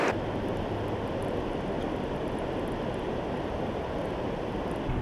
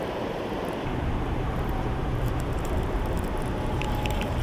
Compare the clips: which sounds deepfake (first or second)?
second